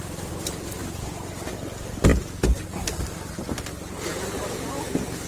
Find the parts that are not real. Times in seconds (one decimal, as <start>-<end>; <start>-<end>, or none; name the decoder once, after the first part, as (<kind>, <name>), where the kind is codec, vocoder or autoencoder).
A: none